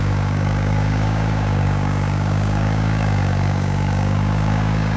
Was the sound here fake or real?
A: fake